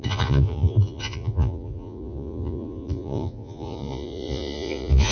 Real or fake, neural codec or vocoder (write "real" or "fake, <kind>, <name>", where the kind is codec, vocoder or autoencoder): fake, vocoder, Vocos